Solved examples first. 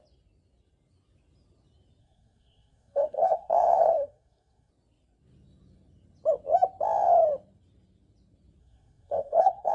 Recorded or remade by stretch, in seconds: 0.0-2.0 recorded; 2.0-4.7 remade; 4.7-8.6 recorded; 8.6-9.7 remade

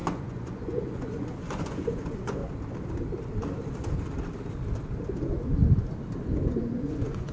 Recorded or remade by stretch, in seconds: 0.0-2.4 remade; 2.4-6.8 recorded; 6.8-7.3 remade